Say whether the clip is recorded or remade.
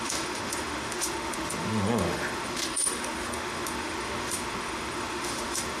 remade